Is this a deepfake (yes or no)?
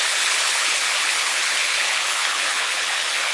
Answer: yes